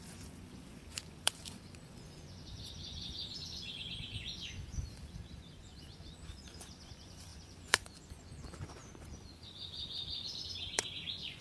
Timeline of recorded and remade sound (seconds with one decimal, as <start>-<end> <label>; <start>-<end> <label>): 0.0-11.4 remade